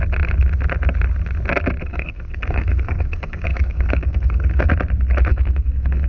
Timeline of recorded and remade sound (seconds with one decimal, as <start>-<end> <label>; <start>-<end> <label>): 0.0-1.9 recorded; 1.9-4.7 remade; 4.7-5.3 recorded; 5.3-6.1 remade